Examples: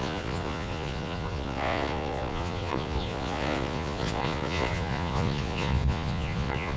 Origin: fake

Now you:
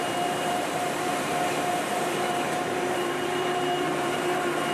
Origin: fake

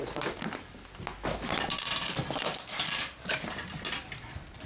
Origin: real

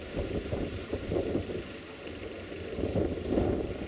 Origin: real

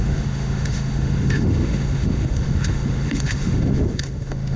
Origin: fake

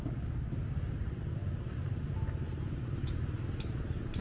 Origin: real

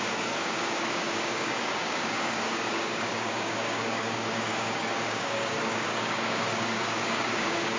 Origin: fake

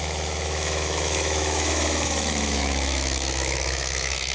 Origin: fake